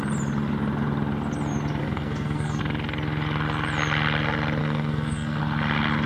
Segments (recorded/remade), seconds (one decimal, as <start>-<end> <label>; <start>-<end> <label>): 0.0-1.8 recorded; 1.8-2.6 remade; 2.6-4.6 recorded; 4.6-5.4 remade; 5.4-6.1 recorded